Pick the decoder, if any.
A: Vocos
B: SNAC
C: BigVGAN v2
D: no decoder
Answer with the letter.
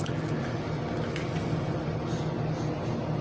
D